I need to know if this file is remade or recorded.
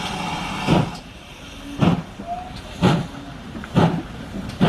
recorded